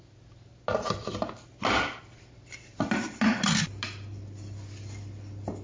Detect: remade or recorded recorded